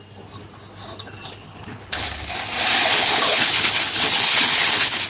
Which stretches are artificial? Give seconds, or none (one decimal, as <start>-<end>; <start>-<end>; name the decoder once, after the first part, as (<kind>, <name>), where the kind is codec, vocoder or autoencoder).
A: 1.3-2.1 (codec, HILCodec); 2.9-5.1